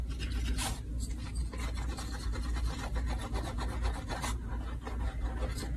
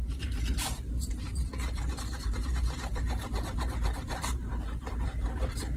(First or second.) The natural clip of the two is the first